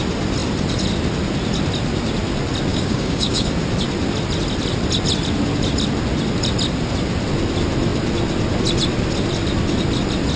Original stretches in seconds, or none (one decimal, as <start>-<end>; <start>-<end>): 0.0-2.7; 3.5-10.4